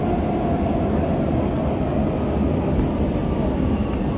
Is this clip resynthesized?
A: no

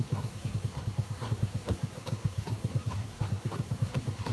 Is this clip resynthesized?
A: yes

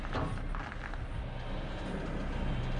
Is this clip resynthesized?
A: no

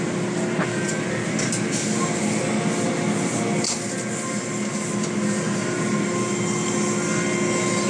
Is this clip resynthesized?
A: no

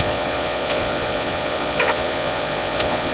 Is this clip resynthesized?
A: yes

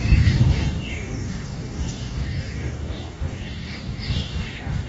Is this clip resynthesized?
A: yes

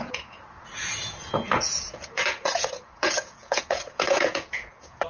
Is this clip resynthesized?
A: yes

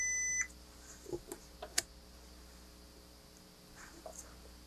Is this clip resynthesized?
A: no